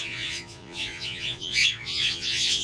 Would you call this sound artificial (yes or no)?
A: yes